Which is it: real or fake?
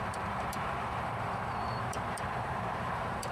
fake